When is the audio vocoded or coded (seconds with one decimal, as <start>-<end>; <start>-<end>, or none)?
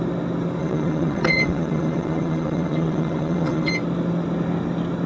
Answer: 0.6-3.7